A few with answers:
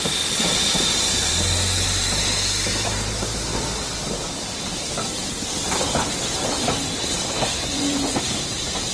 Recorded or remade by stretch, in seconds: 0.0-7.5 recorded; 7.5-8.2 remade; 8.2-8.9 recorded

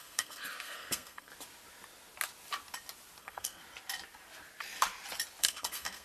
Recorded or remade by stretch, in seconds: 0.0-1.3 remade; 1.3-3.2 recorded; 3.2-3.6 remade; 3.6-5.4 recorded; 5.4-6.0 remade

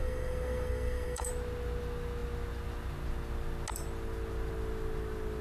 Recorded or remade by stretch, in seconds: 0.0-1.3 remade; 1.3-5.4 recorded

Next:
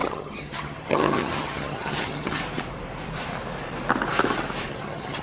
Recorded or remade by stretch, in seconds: 0.0-2.4 remade; 2.4-4.7 recorded; 4.7-5.2 remade